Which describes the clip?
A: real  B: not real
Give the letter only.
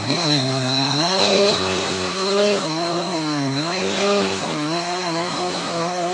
B